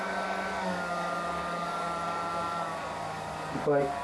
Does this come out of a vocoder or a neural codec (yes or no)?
yes